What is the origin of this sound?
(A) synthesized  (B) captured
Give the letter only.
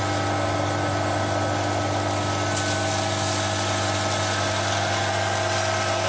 B